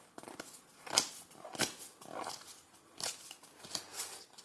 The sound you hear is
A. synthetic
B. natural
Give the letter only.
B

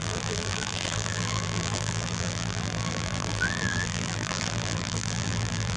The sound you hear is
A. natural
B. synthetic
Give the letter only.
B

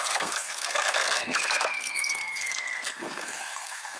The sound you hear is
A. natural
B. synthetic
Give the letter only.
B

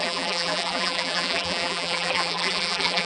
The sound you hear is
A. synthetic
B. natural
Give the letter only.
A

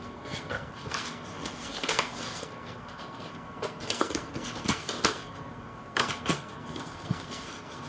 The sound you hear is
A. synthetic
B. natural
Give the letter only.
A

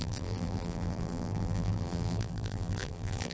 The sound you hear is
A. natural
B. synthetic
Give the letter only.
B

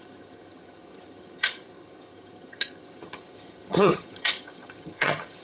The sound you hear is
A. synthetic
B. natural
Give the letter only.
A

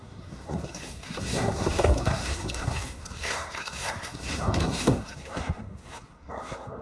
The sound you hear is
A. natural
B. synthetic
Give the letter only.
B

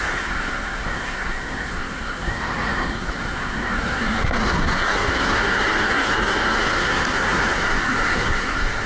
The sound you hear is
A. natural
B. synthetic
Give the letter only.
B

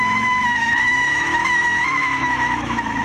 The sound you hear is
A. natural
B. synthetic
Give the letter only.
B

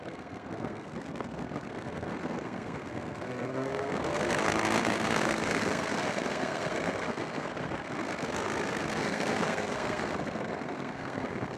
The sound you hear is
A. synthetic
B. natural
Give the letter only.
A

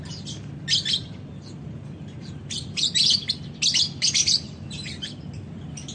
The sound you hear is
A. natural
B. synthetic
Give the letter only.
A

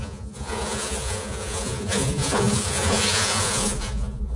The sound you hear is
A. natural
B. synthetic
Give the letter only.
B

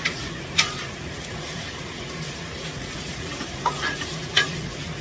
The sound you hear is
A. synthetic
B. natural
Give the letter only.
A